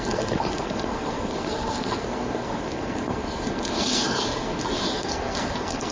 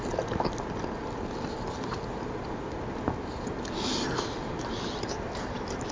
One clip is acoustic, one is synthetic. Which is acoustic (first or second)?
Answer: second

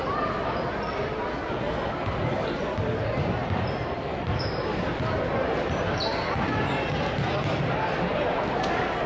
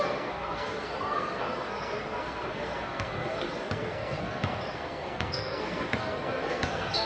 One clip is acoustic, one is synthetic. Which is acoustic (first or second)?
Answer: first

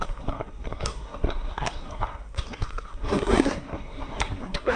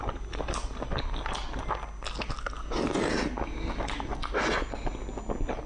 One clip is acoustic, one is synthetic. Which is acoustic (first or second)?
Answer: second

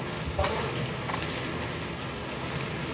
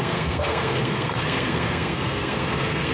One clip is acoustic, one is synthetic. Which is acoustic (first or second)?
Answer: first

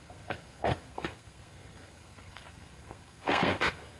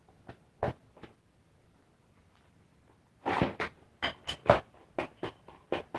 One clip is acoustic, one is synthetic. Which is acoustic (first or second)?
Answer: second